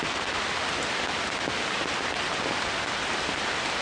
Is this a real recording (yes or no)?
yes